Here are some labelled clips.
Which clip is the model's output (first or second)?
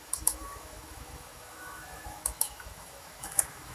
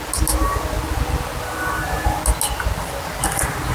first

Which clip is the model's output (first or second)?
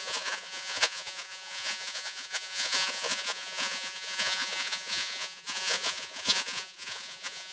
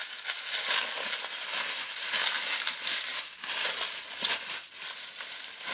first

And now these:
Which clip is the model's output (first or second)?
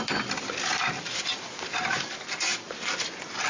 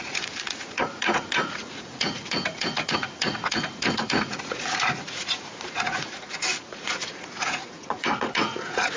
second